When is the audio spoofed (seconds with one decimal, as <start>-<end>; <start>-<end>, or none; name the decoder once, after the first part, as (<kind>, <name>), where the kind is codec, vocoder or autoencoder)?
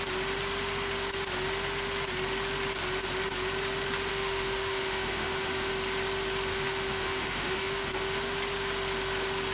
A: 4.1-5.7 (autoencoder, DAC-VAE); 6.5-7.9